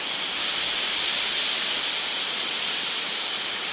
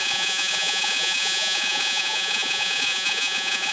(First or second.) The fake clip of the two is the second